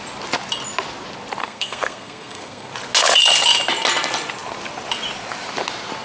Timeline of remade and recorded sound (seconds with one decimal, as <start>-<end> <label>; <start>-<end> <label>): 0.0-1.4 recorded; 1.4-2.7 remade; 2.7-6.0 recorded